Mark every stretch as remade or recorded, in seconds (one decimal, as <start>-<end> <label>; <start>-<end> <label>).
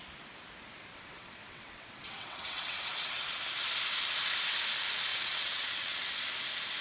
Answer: 0.0-0.9 recorded; 0.9-3.2 remade; 3.2-5.1 recorded; 5.1-6.2 remade; 6.2-6.8 recorded